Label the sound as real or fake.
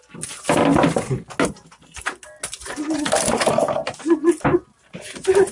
real